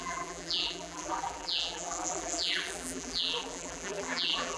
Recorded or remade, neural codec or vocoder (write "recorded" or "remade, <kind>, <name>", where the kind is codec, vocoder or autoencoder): remade, vocoder, BigVGAN v2